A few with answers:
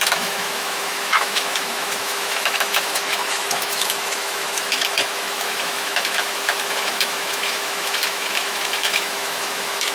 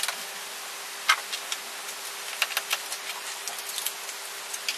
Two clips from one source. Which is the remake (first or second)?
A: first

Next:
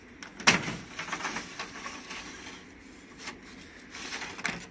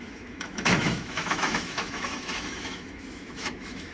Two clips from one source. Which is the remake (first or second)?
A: second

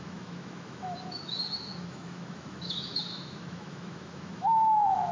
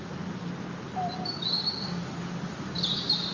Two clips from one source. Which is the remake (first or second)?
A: first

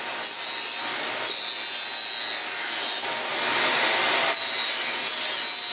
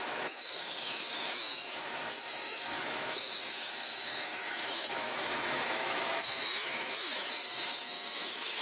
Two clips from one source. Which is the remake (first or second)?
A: second